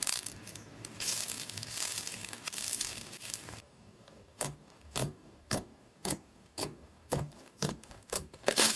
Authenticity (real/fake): fake